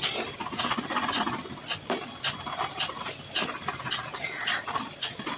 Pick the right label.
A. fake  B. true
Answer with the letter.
B